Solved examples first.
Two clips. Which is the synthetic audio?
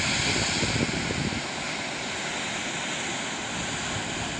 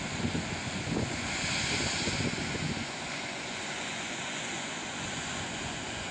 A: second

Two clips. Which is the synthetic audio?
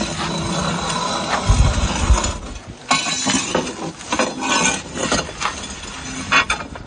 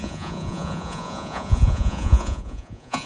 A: second